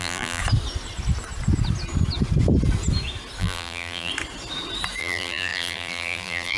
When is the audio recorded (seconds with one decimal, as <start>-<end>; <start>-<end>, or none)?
0.4-3.4; 4.1-5.0